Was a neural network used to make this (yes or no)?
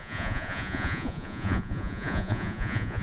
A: yes